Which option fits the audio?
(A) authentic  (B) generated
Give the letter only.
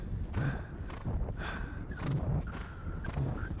A